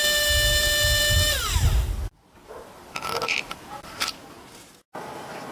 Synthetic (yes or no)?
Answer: no